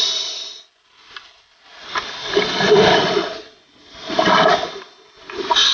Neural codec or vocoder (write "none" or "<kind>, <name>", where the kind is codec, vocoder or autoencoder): none